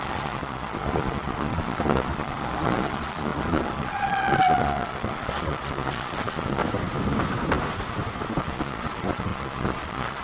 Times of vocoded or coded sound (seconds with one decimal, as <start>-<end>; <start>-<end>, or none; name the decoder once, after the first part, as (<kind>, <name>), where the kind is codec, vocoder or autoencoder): 0.0-6.6 (vocoder, Vocos); 8.4-10.2